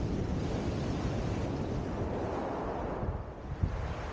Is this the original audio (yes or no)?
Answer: yes